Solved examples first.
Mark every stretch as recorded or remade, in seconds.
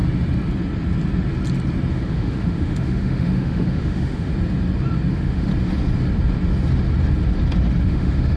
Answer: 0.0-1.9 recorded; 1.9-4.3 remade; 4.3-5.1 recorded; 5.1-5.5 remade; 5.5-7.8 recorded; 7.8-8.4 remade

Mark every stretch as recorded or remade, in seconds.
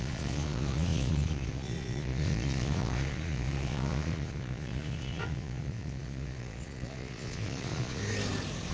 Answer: 0.0-8.0 remade; 8.0-8.7 recorded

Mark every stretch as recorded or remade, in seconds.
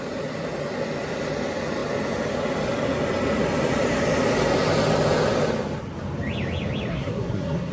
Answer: 0.0-6.9 recorded; 6.9-7.7 remade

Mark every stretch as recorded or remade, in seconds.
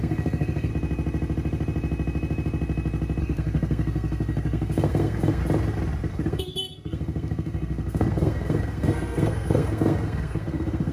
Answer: 0.0-0.7 remade; 0.7-3.2 recorded; 3.2-5.4 remade; 5.4-6.1 recorded; 6.1-10.9 remade